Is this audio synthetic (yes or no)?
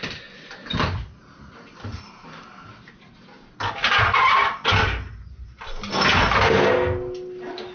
no